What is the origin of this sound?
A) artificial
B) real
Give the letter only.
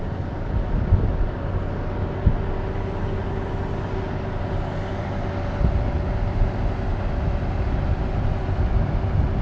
B